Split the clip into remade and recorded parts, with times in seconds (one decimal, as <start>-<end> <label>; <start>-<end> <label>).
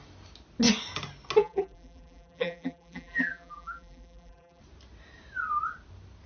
0.0-1.4 recorded; 1.4-4.6 remade; 4.6-6.3 recorded